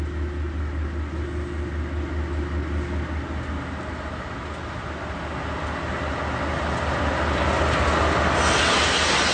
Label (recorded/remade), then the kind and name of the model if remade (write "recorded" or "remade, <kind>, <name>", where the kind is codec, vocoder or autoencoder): recorded